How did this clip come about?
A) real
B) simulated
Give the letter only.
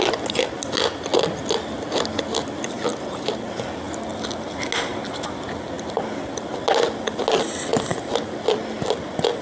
A